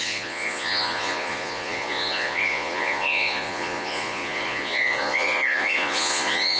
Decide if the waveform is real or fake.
fake